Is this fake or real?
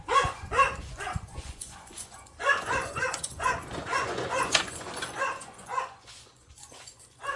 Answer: fake